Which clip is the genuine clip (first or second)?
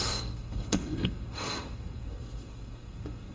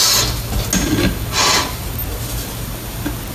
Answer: second